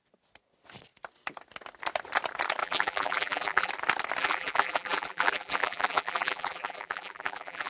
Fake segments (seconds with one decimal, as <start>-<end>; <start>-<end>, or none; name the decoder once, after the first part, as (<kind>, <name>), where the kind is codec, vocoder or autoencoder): 2.6-3.7 (vocoder, BigVGAN v2); 4.2-7.7